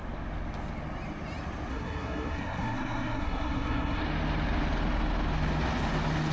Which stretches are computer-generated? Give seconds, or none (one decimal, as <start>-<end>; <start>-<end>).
1.7-4.0